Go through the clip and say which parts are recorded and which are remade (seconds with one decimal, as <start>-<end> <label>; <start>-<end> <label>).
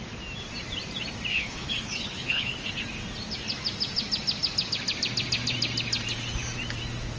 0.0-1.3 recorded; 1.3-2.7 remade; 2.7-7.2 recorded